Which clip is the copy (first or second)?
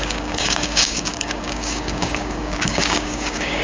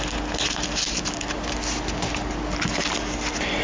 first